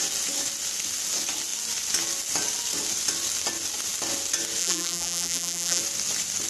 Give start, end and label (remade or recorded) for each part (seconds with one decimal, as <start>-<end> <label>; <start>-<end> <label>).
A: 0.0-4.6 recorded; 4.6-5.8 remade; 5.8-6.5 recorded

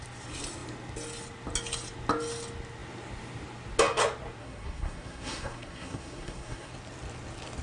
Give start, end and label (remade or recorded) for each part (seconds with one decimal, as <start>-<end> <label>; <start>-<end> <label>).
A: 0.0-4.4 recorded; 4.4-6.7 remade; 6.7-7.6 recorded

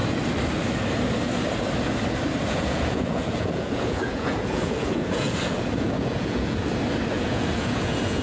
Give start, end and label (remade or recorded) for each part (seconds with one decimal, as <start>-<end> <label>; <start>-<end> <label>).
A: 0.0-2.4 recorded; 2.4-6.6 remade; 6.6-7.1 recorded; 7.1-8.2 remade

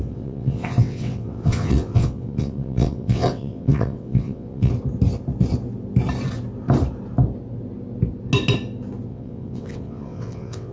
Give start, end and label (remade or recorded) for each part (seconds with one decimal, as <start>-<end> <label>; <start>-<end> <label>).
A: 0.0-4.7 remade; 4.7-9.1 recorded; 9.1-10.7 remade

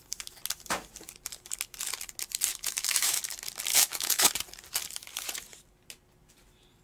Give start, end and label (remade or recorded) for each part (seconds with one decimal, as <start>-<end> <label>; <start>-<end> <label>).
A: 0.0-2.5 recorded; 2.5-3.2 remade; 3.2-3.7 recorded; 3.7-4.3 remade; 4.3-6.8 recorded

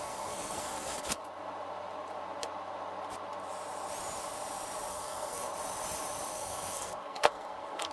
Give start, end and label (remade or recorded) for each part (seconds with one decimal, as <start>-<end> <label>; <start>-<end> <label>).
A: 0.0-1.2 remade; 1.2-4.9 recorded; 4.9-5.5 remade; 5.5-6.3 recorded; 6.3-7.9 remade